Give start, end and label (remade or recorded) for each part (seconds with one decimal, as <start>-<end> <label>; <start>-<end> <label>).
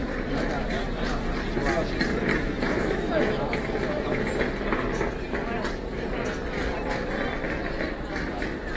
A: 0.0-2.3 recorded; 2.3-4.2 remade; 4.2-8.8 recorded